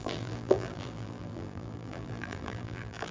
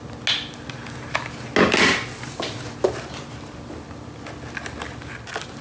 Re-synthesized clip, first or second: first